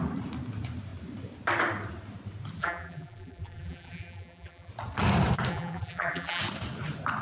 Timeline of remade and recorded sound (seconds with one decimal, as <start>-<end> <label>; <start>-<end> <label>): 0.0-2.6 recorded; 2.6-4.7 remade; 4.7-5.5 recorded; 5.5-6.4 remade; 6.4-7.2 recorded